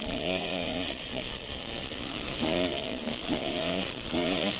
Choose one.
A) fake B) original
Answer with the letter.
A